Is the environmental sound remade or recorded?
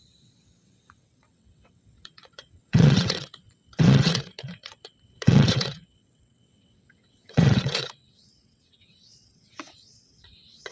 remade